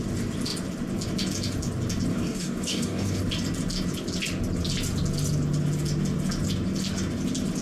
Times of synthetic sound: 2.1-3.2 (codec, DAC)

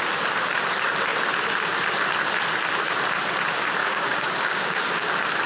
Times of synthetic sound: 3.8-5.1 (codec, DAC)

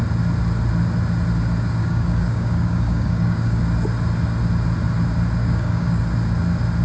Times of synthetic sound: 1.8-3.6 (codec, DAC); 5.4-6.0